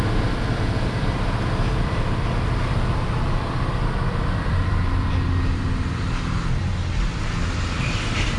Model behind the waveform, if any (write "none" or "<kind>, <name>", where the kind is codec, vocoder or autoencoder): vocoder, BigVGAN v2